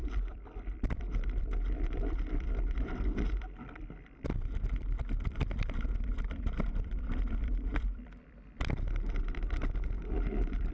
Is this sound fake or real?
fake